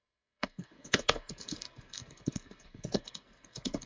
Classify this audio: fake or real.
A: fake